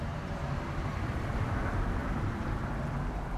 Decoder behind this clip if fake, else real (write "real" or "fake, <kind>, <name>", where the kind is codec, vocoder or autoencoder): fake, vocoder, BigVGAN v2